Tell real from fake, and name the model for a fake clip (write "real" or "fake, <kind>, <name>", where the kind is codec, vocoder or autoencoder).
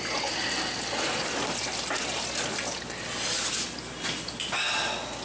real